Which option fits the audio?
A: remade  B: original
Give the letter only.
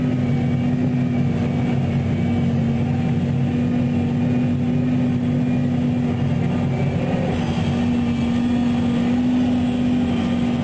B